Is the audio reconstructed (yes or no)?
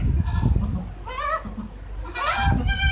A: no